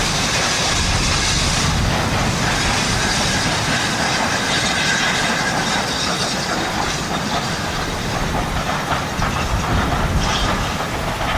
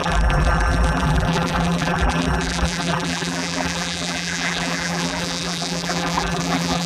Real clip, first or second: first